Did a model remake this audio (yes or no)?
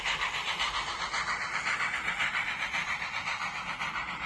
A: no